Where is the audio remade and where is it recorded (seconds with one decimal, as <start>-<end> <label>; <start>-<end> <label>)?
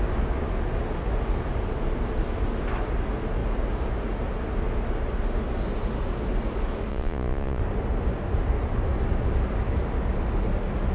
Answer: 0.0-6.9 recorded; 6.9-7.6 remade; 7.6-10.9 recorded